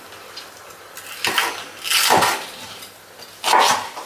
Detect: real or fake real